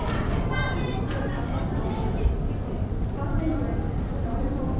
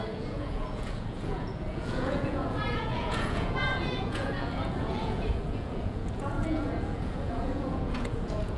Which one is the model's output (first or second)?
second